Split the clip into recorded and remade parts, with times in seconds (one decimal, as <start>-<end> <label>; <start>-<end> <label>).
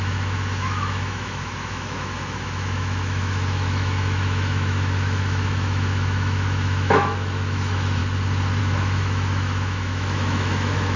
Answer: 0.0-8.0 remade; 8.0-8.6 recorded; 8.6-11.0 remade